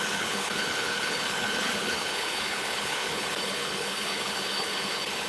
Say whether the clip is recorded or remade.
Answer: remade